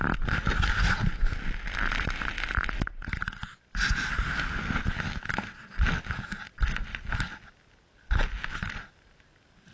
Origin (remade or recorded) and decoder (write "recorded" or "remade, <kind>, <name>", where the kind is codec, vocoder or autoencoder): recorded